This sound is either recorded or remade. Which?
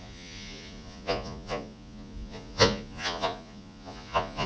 remade